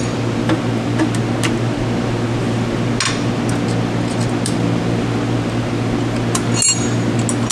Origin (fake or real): real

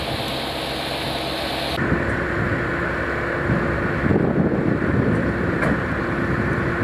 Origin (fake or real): real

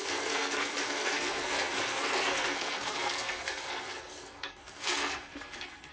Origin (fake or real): fake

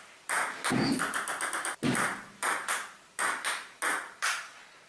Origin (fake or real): real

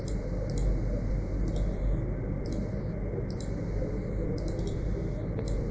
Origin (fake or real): real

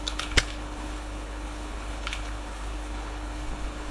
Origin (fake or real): fake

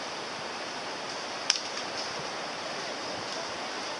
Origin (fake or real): real